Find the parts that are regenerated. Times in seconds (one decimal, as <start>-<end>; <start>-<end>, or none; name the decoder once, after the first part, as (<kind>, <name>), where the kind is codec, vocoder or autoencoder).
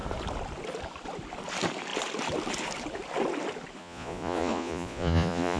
3.8-5.6 (vocoder, Vocos)